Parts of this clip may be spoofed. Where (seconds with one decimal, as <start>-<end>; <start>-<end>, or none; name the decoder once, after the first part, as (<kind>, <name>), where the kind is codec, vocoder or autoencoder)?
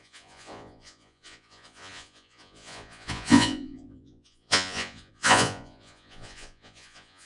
0.0-7.3 (vocoder, Vocos)